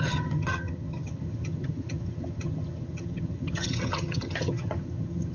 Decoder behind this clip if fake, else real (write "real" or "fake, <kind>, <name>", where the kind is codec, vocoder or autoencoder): fake, vocoder, HiFi-GAN